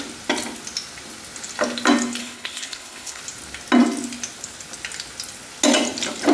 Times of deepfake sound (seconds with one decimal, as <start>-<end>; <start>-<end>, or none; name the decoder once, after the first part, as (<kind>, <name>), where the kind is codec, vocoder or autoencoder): 2.2-3.2 (codec, HILCodec)